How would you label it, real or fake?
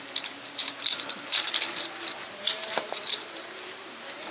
fake